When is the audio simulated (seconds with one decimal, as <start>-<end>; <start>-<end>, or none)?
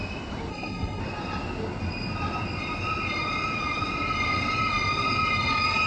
0.5-1.0